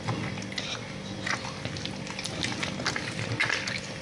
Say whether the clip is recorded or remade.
recorded